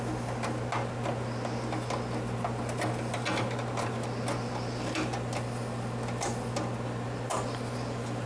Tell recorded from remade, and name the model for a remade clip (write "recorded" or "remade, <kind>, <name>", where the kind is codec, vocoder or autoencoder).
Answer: recorded